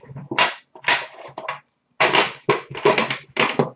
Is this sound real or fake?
real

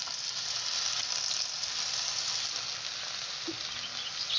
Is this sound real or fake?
real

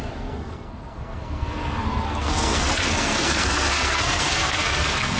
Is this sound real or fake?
fake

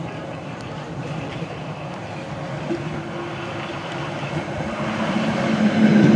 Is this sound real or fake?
real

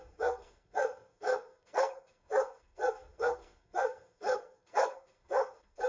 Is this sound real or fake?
fake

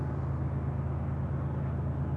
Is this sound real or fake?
real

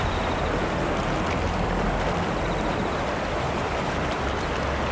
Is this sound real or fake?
real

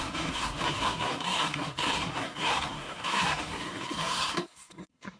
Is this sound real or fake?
fake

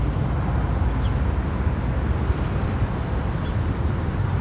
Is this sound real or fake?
real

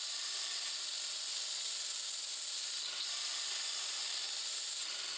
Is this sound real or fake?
real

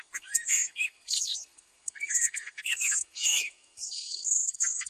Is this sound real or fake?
fake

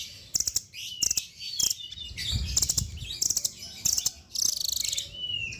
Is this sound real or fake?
real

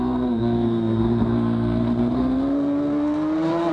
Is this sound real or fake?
fake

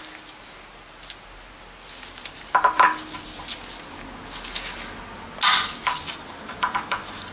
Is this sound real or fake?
real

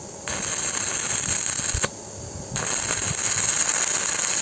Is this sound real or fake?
real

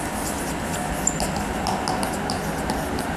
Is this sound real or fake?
real